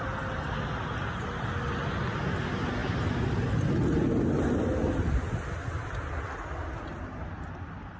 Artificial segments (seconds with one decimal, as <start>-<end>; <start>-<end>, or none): none